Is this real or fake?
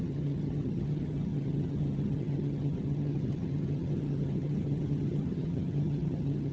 fake